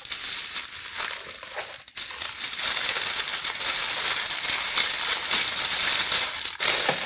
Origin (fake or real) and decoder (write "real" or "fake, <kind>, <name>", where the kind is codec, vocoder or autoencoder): real